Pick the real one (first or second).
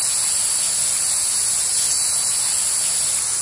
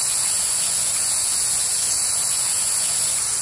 first